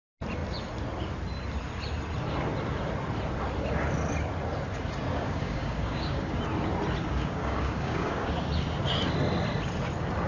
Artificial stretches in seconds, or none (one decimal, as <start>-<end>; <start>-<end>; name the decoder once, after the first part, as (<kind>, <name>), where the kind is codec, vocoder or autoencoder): 5.1-6.4 (codec, DAC); 7.0-8.3